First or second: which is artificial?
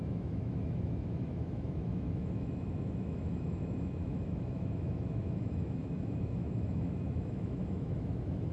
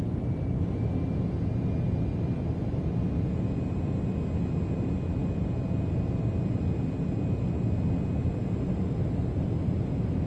first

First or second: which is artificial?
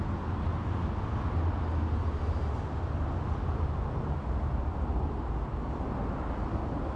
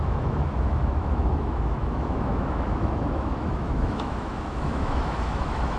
second